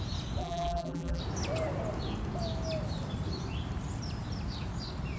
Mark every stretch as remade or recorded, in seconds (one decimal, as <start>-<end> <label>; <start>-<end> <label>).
0.0-0.4 recorded; 0.4-1.2 remade; 1.2-5.2 recorded